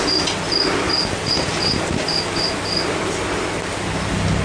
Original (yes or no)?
yes